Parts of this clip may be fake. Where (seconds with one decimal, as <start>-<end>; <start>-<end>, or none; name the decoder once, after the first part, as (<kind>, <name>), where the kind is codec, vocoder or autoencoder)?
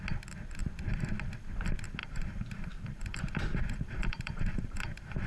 2.0-5.3 (vocoder, BigVGAN v2)